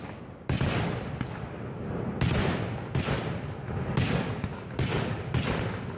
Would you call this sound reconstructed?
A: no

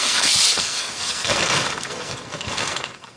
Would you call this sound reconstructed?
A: yes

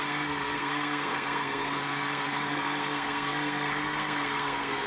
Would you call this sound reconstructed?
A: yes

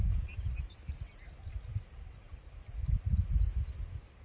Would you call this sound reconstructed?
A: no